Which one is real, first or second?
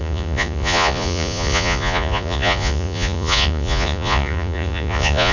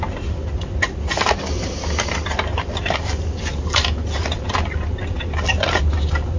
second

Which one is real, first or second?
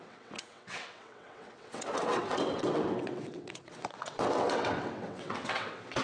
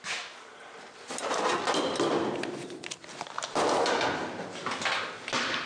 second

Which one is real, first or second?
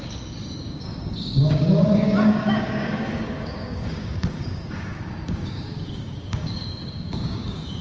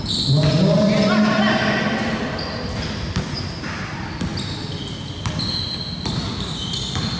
second